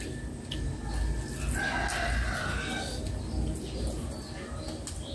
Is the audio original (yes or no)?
yes